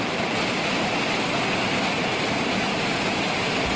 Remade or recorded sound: recorded